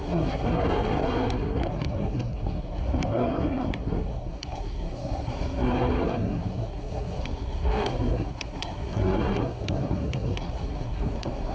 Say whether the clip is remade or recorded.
remade